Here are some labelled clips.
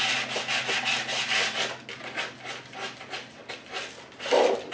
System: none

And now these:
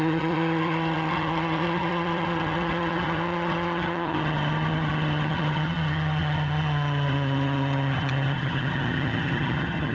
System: vocoder, HiFi-GAN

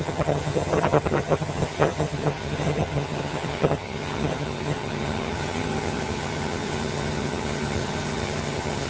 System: vocoder, HiFi-GAN